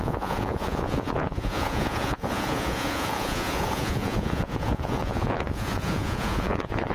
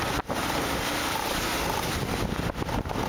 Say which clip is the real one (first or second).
second